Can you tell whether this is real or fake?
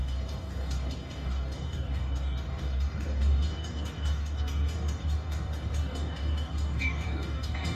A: fake